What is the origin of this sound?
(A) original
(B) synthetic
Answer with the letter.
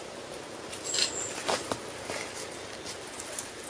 A